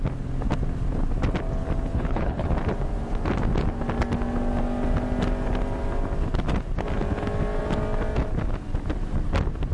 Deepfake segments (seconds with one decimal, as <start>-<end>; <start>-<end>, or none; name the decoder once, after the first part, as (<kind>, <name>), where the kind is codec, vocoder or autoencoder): 1.9-2.5 (codec, HILCodec)